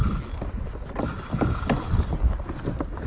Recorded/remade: recorded